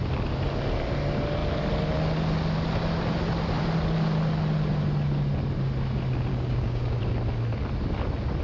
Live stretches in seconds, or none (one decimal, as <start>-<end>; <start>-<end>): 0.0-6.3; 7.0-8.4